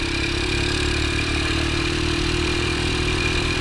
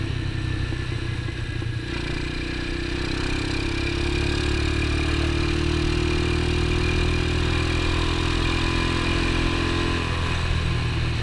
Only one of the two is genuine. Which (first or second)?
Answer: second